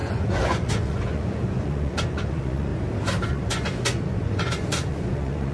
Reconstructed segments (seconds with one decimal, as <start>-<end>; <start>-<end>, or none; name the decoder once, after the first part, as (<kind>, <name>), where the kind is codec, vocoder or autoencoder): 0.0-2.7 (vocoder, Vocos); 3.3-5.5